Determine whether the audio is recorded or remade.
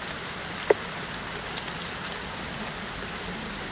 recorded